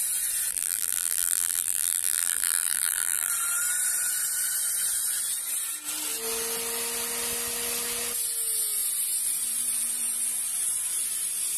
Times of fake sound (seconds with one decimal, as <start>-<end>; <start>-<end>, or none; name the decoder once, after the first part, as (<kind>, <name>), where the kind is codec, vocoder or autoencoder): 0.5-3.3 (vocoder, BigVGAN v2)